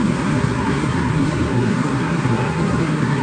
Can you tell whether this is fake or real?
fake